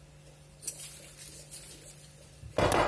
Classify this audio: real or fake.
real